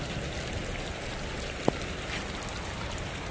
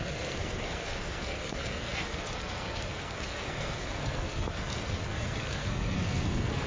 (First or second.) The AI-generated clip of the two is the second